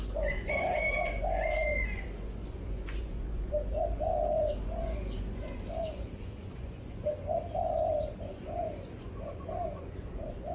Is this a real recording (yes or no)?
no